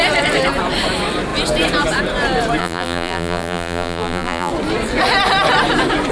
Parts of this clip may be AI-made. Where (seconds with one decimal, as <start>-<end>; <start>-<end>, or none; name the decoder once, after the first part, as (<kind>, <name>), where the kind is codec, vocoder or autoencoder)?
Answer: 2.6-4.5 (vocoder, BigVGAN v2)